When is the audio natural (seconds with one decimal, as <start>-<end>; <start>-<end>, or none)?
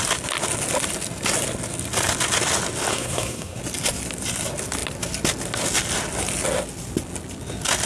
0.0-2.9; 3.6-7.9